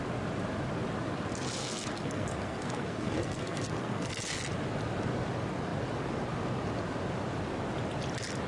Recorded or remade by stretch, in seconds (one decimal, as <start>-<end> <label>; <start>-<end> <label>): 0.0-1.6 recorded; 1.6-4.1 remade; 4.1-8.5 recorded